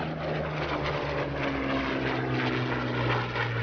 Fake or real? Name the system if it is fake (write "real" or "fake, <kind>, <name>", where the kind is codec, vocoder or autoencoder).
real